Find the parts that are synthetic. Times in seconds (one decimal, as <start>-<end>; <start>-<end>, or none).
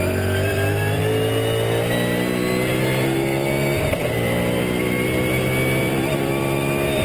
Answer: 0.0-1.0; 2.7-4.0; 5.8-7.0